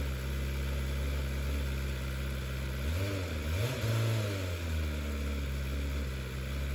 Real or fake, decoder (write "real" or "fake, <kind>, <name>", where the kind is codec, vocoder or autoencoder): real